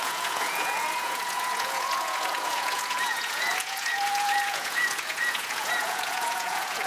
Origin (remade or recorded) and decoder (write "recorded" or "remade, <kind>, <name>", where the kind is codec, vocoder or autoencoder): remade, vocoder, Vocos